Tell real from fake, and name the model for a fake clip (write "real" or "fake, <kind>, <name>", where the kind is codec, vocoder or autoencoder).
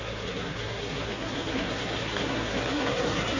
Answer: fake, codec, SNAC